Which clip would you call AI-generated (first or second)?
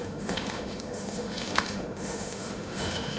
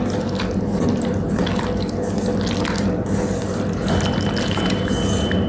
first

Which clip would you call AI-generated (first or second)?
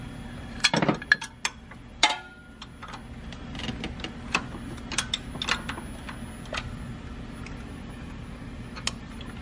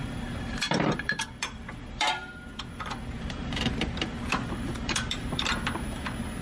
second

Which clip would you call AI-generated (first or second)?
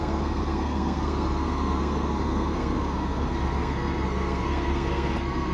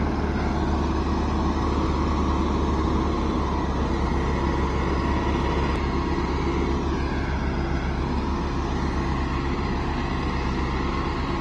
first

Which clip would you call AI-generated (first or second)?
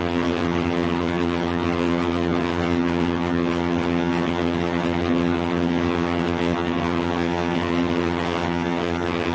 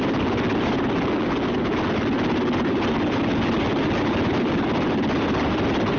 first